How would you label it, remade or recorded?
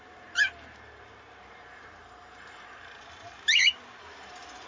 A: remade